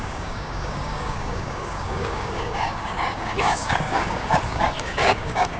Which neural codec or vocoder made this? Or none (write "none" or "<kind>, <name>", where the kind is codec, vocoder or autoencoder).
codec, DAC